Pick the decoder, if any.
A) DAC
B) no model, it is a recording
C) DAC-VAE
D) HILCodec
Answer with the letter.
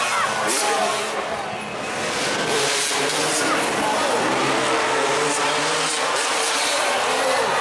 B